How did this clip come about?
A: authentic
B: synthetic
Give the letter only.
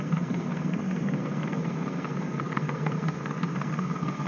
B